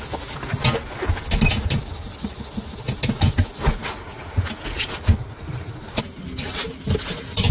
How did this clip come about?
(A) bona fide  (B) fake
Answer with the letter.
A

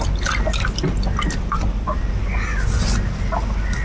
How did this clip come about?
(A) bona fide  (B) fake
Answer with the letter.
A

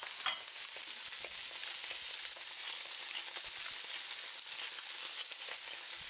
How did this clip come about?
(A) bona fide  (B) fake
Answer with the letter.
A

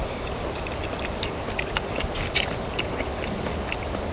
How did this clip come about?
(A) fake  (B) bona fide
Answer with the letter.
B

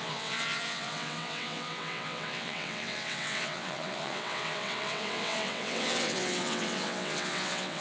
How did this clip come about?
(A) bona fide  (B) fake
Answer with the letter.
B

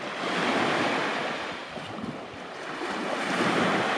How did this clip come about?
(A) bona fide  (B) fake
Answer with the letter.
A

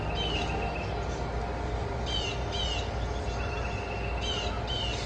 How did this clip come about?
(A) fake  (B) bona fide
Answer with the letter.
B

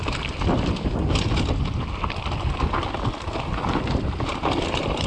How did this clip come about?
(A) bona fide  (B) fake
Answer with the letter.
A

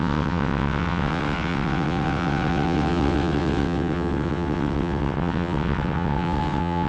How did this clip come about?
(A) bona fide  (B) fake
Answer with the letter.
B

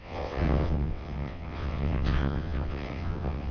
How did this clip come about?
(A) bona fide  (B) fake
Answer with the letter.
B